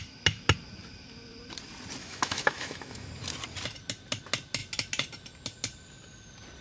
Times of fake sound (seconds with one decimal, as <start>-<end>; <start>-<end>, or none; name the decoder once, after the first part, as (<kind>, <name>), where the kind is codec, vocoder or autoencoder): 2.0-3.1 (autoencoder, DAC-VAE)